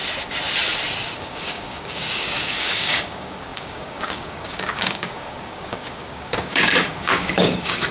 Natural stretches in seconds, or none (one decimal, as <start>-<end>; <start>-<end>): 0.0-1.2